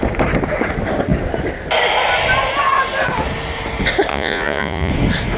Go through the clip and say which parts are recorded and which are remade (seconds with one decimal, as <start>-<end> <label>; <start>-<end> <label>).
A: 0.0-4.1 recorded; 4.1-4.9 remade; 4.9-5.4 recorded